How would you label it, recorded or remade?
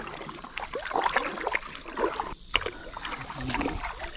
recorded